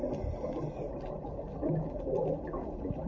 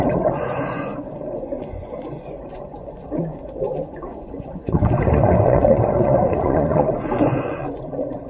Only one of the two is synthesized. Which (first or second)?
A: second